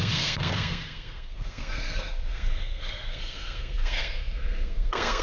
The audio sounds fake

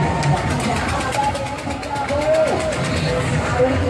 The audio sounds real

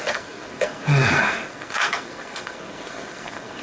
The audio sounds fake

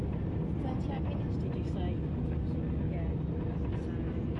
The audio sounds real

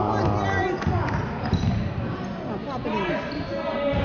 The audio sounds real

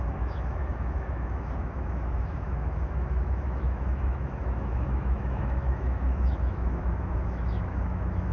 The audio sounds fake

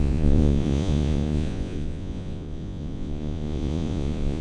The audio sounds fake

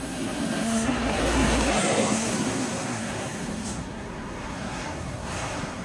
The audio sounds fake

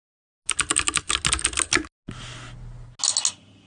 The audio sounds real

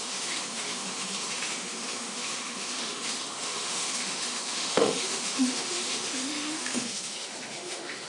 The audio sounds fake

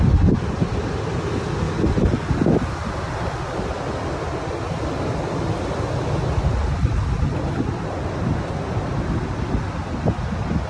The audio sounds real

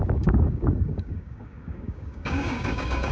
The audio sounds fake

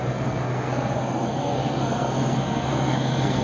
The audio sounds fake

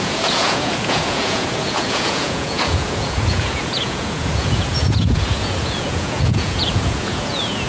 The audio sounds fake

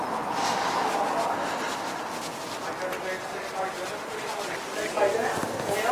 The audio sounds real